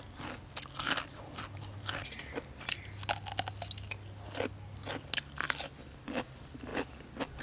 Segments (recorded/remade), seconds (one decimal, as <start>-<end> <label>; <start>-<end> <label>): 0.0-7.4 recorded